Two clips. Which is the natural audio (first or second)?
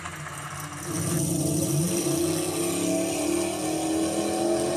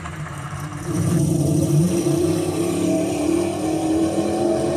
first